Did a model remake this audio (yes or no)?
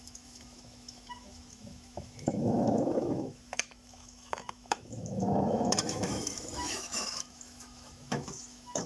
yes